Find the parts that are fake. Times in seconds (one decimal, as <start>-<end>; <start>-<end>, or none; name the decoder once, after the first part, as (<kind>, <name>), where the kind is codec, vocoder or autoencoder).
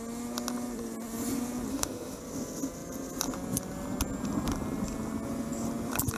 1.7-2.2 (autoencoder, DAC-VAE)